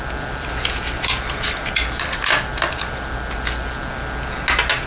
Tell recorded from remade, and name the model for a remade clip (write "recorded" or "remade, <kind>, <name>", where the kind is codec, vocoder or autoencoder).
recorded